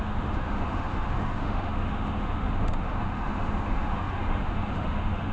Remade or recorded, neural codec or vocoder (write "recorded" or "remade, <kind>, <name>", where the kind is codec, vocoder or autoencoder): remade, autoencoder, DAC-VAE